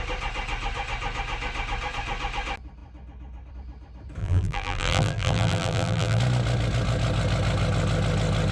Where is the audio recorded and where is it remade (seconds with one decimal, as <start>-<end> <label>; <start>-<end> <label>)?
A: 0.0-4.2 recorded; 4.2-6.2 remade; 6.2-8.5 recorded